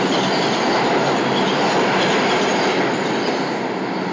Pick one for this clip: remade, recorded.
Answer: recorded